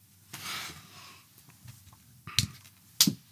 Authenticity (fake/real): real